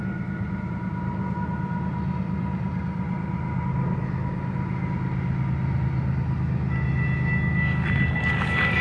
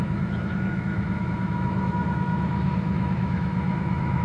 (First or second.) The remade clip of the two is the second